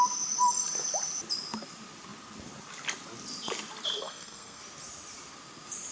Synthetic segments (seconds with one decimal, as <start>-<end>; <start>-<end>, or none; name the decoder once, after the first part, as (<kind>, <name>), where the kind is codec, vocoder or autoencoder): 4.0-4.6 (codec, SNAC)